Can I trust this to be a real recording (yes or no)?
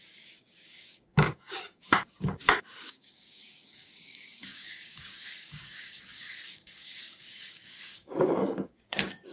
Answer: no